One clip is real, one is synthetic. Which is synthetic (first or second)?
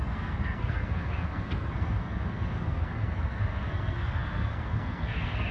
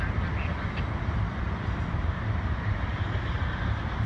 first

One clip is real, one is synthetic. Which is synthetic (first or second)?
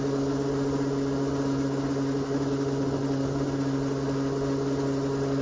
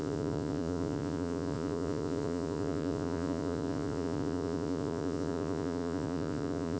second